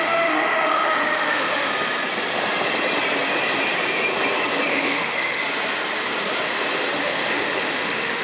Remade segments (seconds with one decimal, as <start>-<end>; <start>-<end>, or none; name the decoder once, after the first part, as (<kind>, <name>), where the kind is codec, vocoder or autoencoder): 0.0-1.7 (autoencoder, DAC-VAE); 4.7-5.4; 7.0-8.2